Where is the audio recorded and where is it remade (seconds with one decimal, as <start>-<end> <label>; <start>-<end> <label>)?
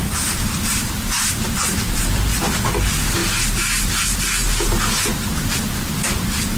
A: 0.0-2.0 remade; 2.0-6.6 recorded